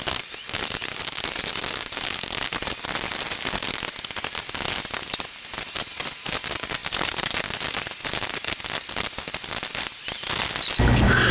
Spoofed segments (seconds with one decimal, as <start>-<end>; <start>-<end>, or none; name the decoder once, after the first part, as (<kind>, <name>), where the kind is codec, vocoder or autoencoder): none